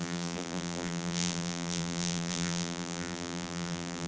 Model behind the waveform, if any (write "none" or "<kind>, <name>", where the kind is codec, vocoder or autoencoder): vocoder, BigVGAN v2